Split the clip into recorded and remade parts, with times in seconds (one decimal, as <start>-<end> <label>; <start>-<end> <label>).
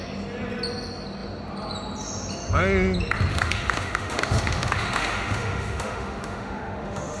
0.0-3.3 recorded; 3.3-7.2 remade